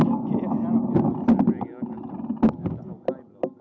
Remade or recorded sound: recorded